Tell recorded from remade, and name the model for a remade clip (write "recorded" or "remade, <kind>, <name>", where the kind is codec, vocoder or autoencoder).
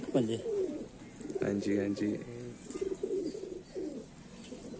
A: recorded